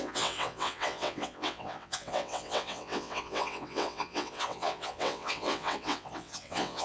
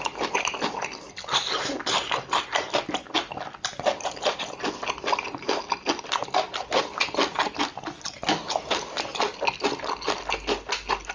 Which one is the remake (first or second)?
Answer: first